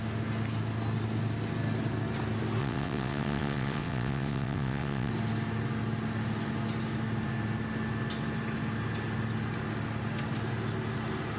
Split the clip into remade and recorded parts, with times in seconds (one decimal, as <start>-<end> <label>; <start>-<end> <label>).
0.0-2.6 recorded; 2.6-5.1 remade; 5.1-11.4 recorded